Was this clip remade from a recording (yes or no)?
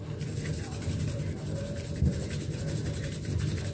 no